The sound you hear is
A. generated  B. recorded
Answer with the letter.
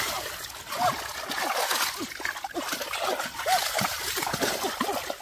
B